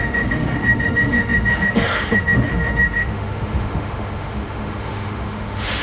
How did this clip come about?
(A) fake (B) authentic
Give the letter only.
A